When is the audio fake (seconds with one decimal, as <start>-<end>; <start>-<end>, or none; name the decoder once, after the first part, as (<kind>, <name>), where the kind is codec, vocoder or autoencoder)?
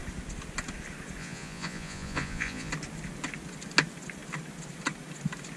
1.2-2.7 (vocoder, Vocos)